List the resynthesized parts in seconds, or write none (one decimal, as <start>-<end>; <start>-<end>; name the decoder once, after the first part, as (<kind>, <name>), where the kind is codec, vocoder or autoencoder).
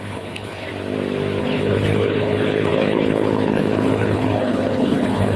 0.0-0.7 (codec, HILCodec); 1.4-5.4